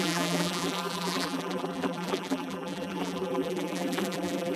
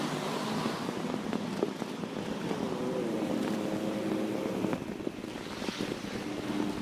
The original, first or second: second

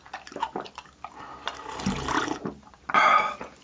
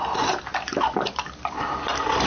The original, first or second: first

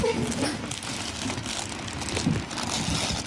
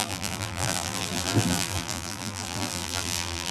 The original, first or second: first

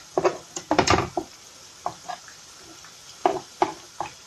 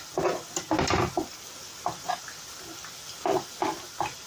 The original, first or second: second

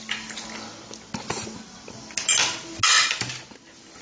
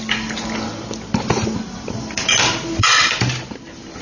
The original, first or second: first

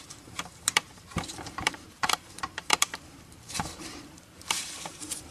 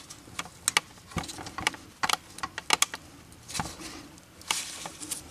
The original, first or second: second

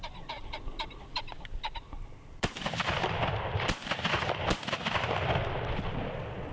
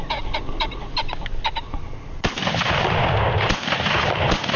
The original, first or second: second